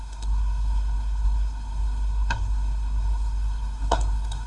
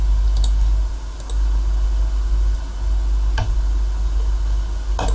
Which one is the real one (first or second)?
second